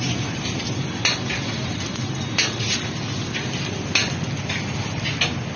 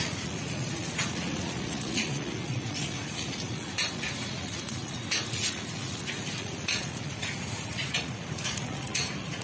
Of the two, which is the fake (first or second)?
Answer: second